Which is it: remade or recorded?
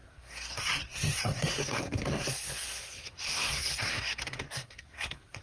remade